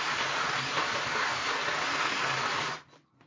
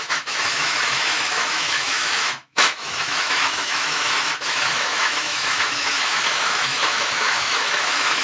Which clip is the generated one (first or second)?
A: second